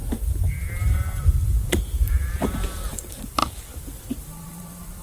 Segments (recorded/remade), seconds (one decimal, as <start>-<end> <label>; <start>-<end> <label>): 0.0-5.0 remade